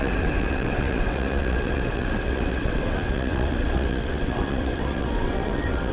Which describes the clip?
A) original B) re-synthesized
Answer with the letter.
B